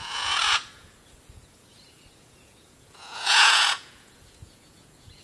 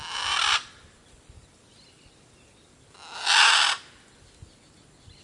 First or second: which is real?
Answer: second